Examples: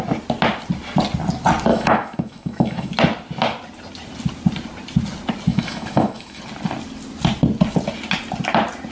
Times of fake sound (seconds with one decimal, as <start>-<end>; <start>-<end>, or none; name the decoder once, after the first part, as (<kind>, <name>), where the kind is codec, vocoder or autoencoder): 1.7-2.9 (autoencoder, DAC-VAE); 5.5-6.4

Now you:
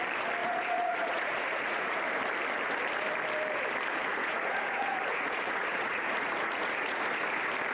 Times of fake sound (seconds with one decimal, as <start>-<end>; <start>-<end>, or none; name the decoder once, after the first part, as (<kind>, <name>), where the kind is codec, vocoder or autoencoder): 0.4-2.0 (vocoder, Vocos); 4.1-7.2

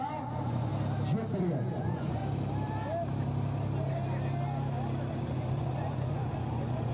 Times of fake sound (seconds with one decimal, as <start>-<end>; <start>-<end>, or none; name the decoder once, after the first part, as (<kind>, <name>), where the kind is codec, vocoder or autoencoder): 0.0-0.7 (vocoder, Vocos); 1.4-2.2; 5.1-6.9